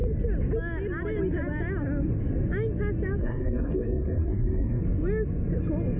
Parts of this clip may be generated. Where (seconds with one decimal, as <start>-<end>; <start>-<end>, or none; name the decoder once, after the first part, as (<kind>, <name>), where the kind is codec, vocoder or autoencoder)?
3.2-4.8 (codec, SNAC)